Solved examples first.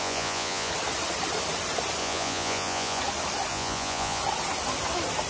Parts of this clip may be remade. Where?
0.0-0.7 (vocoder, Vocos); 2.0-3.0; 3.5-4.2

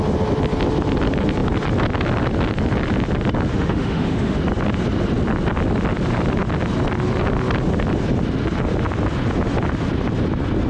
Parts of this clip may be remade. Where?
3.5-4.4 (autoencoder, DAC-VAE)